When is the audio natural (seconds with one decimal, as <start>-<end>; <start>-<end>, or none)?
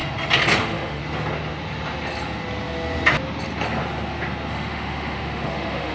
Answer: 0.0-0.6; 1.0-4.5